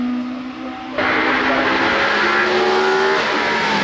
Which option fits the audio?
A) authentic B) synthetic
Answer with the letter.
A